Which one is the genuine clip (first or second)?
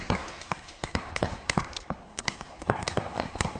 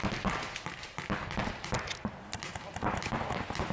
second